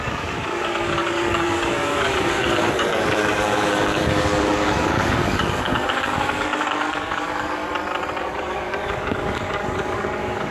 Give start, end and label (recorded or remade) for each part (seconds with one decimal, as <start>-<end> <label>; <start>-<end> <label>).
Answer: 0.0-7.6 remade; 7.6-8.2 recorded; 8.2-10.5 remade

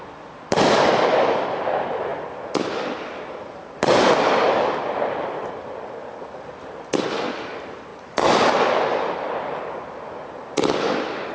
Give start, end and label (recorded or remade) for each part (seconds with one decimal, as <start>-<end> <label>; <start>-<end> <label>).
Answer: 0.0-11.3 recorded